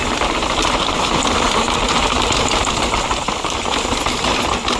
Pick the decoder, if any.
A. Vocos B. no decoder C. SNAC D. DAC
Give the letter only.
B